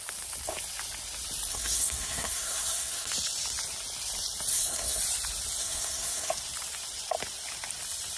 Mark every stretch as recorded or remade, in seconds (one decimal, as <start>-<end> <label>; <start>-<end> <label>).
0.0-1.5 recorded; 1.5-3.1 remade; 3.1-4.5 recorded; 4.5-5.0 remade; 5.0-5.6 recorded; 5.6-6.3 remade; 6.3-8.2 recorded